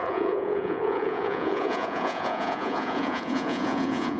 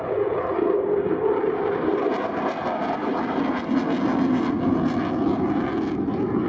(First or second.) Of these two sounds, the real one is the second